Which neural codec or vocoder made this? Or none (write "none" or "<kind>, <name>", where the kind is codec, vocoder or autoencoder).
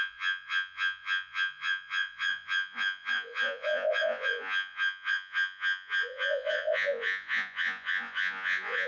vocoder, Vocos